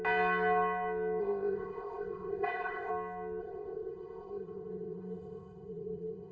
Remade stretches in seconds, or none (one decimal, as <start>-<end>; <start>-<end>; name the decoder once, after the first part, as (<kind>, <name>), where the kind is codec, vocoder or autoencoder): 1.2-2.9 (codec, ZipCodec); 3.4-6.3